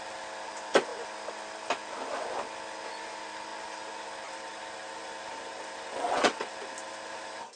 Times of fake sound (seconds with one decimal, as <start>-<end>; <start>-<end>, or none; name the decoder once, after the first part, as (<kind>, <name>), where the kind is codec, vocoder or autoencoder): 5.9-6.5 (vocoder, WaveNeXt)